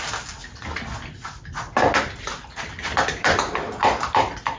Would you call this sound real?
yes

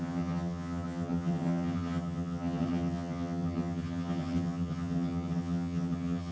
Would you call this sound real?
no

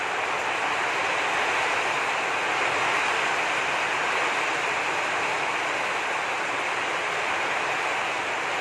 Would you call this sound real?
yes